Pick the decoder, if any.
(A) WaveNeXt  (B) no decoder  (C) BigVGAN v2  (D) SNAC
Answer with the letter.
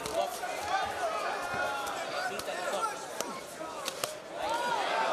B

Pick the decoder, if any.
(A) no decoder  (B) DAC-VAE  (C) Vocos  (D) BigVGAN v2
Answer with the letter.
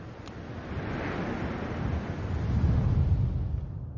A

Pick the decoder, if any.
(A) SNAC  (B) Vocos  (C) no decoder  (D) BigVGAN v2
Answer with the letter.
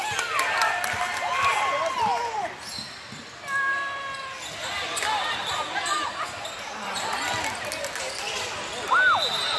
C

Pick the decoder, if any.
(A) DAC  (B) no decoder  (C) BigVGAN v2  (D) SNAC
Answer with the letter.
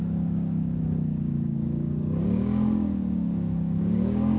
A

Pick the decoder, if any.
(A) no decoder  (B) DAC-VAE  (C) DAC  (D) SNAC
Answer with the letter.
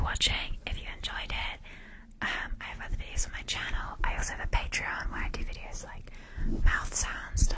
A